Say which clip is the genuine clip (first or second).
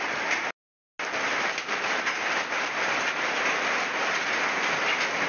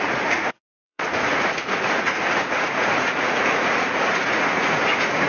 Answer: first